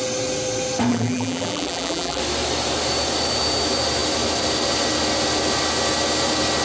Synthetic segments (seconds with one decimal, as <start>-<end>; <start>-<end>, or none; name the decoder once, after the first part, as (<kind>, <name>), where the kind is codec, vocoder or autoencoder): 0.9-2.2 (vocoder, BigVGAN v2)